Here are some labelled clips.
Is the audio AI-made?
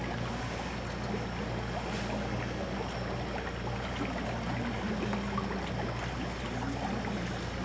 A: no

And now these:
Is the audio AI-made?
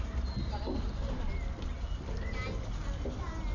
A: no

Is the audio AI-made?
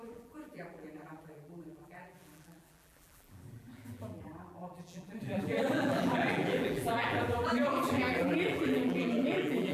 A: yes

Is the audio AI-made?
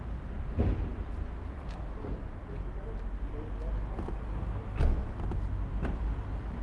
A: no